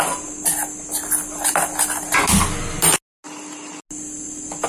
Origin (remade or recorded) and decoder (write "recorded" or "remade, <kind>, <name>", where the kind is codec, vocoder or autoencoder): recorded